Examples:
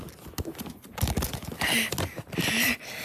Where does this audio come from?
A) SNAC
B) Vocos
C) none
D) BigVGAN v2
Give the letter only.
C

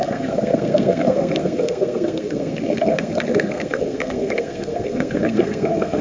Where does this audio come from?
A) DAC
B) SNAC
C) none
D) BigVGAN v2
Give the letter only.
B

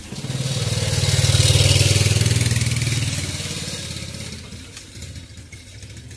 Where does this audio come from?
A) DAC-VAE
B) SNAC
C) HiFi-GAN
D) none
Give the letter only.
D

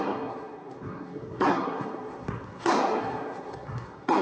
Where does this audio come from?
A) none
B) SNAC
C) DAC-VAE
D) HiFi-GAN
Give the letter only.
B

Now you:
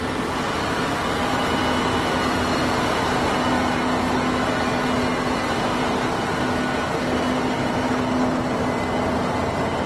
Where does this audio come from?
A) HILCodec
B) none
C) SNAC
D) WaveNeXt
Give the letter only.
B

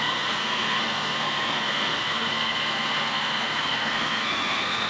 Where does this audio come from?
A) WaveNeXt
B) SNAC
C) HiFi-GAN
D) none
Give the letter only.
B